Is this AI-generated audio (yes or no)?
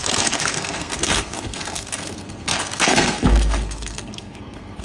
yes